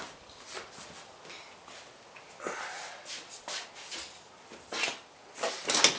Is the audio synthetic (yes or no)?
no